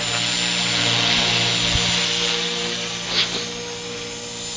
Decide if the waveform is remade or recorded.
recorded